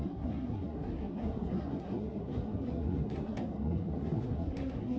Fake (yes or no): yes